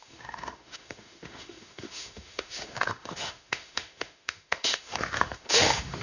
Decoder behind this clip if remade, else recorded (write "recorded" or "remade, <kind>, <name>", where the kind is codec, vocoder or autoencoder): remade, autoencoder, DAC-VAE